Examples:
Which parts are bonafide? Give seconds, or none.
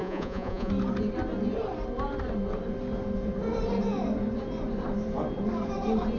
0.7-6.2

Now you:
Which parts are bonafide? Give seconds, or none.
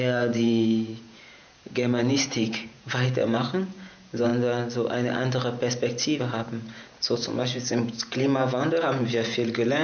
4.3-6.2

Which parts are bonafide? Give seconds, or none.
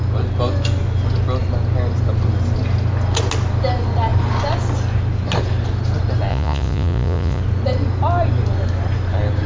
0.0-6.3; 7.4-9.5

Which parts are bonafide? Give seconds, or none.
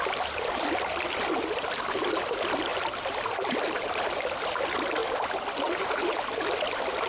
0.0-7.1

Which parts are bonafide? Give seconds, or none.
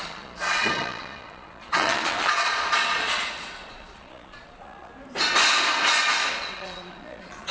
4.9-6.3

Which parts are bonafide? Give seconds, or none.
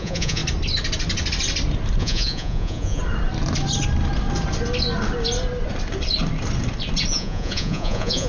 0.4-2.0; 3.0-7.1